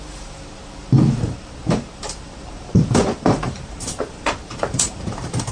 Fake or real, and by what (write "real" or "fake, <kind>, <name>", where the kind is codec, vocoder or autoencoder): fake, vocoder, BigVGAN v2